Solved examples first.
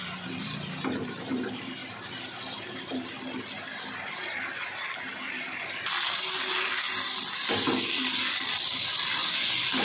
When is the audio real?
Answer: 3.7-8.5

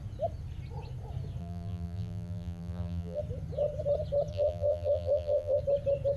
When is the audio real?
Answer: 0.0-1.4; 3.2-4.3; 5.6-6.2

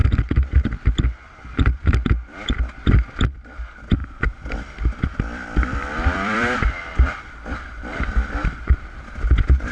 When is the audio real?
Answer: 0.0-4.0; 9.2-9.7

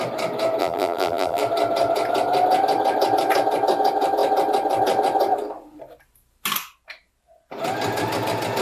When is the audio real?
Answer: 0.0-0.6; 1.4-8.6

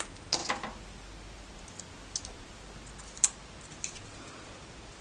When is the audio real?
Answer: 0.0-5.0

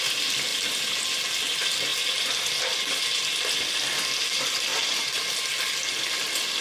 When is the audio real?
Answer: 0.0-4.7; 5.3-6.6

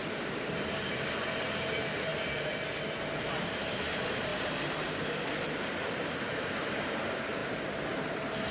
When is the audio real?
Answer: 2.1-3.0

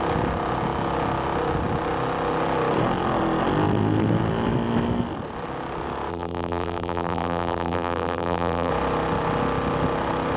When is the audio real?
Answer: 0.0-6.1; 8.7-10.4